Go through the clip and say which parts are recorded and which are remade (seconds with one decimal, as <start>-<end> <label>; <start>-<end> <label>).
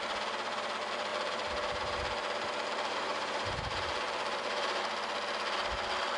0.0-1.1 recorded; 1.1-4.8 remade; 4.8-6.2 recorded